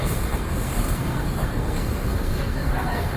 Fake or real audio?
fake